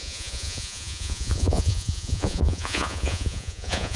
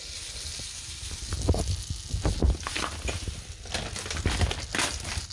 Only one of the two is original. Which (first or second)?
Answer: second